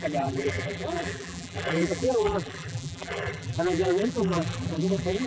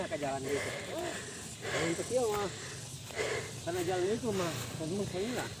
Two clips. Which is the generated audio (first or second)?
first